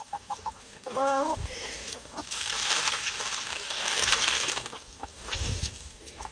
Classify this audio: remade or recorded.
remade